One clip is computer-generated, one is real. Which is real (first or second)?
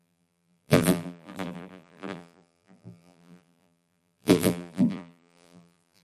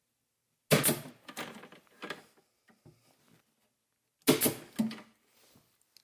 second